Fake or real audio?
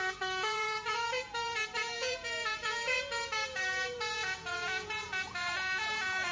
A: fake